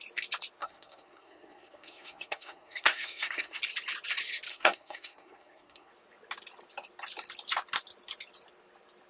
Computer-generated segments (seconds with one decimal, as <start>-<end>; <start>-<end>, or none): 0.6-3.6; 4.5-5.9